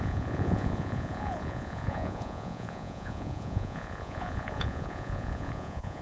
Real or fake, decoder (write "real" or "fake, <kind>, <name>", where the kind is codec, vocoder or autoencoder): fake, vocoder, Vocos